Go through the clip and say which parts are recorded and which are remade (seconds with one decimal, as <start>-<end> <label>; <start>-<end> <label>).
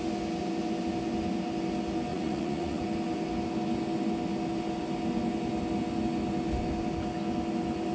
0.0-2.1 recorded; 2.1-2.8 remade; 2.8-7.9 recorded